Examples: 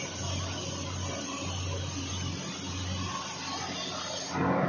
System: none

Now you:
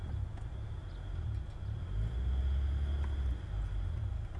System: none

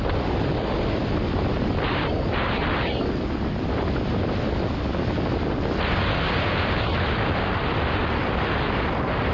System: none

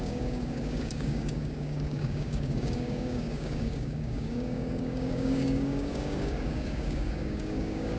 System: codec, DAC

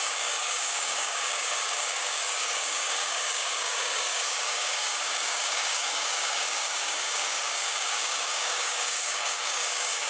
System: codec, DAC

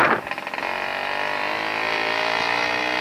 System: none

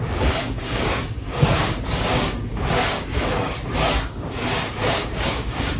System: codec, DAC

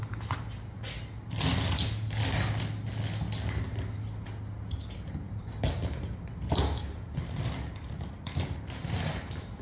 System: none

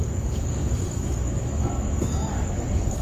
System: codec, DAC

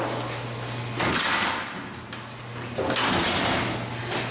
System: none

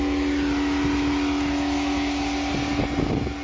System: none